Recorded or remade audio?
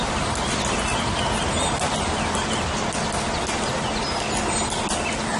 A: recorded